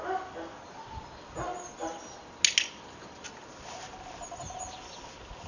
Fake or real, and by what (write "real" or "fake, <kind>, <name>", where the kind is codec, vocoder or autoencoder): real